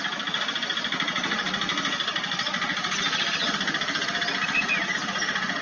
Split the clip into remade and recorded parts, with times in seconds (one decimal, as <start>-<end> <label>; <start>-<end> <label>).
0.0-5.6 recorded

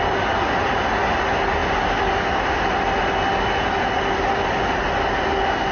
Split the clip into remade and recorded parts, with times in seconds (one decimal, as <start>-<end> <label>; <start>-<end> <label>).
0.0-5.7 recorded

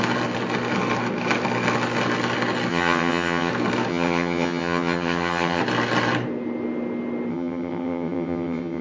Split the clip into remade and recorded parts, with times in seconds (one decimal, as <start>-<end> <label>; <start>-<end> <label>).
0.0-2.7 recorded; 2.7-3.5 remade; 3.5-3.9 recorded; 3.9-5.6 remade; 5.6-7.3 recorded; 7.3-8.8 remade